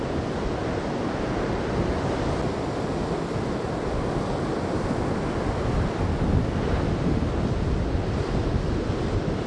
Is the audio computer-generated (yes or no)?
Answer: no